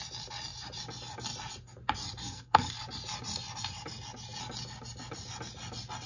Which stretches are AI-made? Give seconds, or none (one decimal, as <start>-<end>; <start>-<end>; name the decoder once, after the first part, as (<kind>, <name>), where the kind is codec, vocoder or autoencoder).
2.2-2.7 (codec, SNAC)